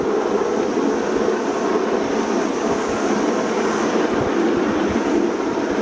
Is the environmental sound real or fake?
real